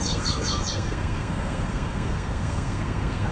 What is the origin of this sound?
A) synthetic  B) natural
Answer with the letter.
A